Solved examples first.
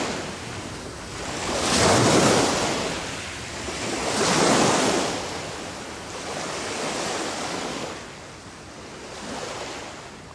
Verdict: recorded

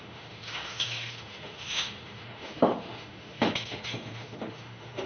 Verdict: remade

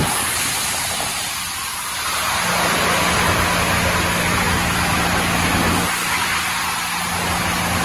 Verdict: recorded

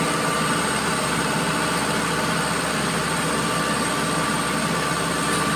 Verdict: recorded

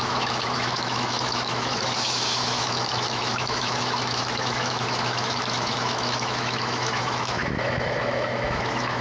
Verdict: remade